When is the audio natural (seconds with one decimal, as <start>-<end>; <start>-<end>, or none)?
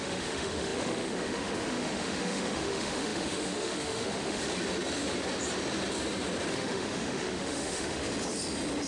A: 4.4-6.5; 8.0-8.9